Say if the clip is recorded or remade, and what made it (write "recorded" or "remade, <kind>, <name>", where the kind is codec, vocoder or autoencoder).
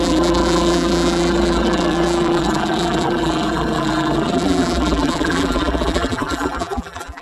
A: remade, vocoder, BigVGAN v2